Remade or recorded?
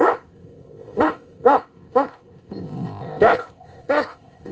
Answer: remade